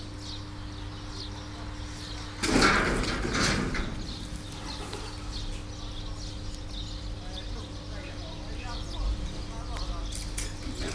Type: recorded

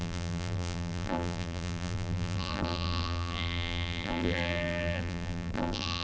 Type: remade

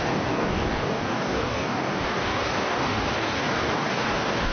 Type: remade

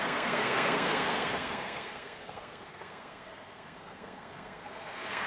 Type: remade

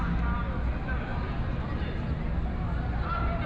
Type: recorded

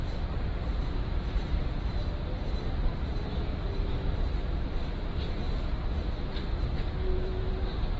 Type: remade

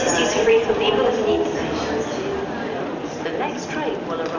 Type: recorded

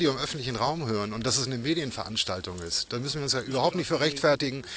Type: recorded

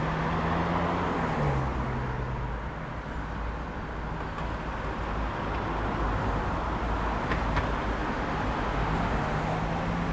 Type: recorded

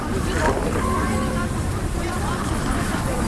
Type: remade